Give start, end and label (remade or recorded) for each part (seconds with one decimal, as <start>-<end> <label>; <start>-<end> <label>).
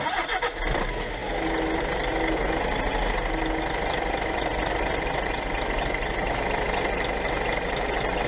0.0-2.9 recorded; 2.9-4.8 remade; 4.8-8.3 recorded